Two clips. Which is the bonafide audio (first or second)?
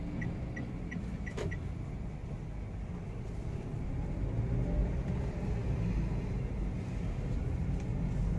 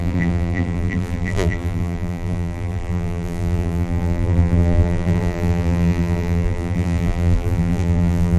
first